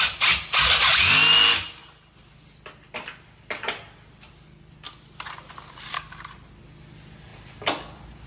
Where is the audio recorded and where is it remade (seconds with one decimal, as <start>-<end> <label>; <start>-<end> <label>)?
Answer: 0.0-8.3 recorded